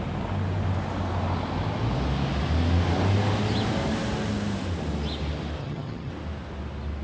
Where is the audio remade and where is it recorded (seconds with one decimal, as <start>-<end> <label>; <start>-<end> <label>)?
0.0-5.6 recorded; 5.6-6.1 remade; 6.1-7.0 recorded